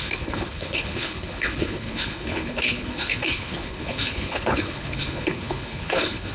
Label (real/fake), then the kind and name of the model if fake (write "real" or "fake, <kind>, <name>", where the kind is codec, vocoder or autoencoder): fake, codec, HILCodec